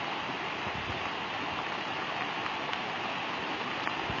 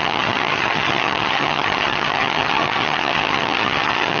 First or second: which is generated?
second